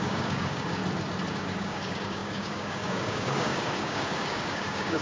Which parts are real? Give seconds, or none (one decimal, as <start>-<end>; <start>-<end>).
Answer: 0.8-1.3